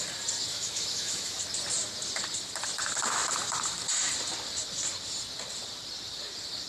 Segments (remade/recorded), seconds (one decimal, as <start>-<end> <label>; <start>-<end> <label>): 0.0-0.5 recorded; 0.5-1.4 remade; 1.4-6.7 recorded